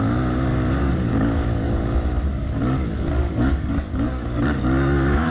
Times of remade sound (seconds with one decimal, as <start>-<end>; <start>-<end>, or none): 0.8-1.7; 2.3-5.3